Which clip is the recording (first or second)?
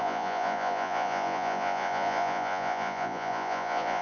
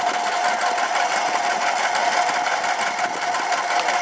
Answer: second